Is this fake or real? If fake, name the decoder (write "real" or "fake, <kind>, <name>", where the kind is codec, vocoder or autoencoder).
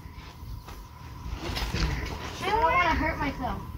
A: real